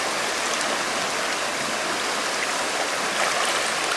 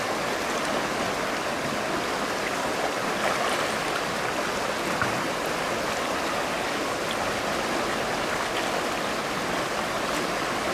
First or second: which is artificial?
second